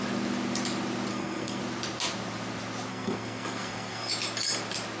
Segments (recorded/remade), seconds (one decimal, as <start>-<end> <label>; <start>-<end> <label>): 0.0-1.1 recorded; 1.1-1.6 remade; 1.6-2.9 recorded; 2.9-4.1 remade; 4.1-5.0 recorded